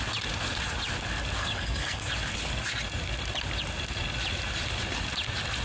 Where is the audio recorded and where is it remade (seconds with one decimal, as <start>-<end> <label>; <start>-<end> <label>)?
0.0-1.4 recorded; 1.4-2.1 remade; 2.1-5.6 recorded